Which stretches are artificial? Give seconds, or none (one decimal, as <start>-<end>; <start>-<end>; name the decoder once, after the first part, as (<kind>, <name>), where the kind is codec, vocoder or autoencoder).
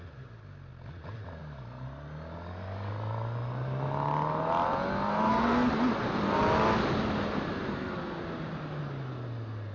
5.1-5.7 (codec, SNAC); 7.7-8.2